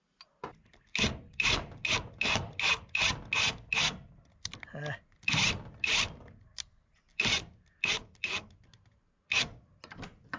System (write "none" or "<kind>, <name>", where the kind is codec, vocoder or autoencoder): none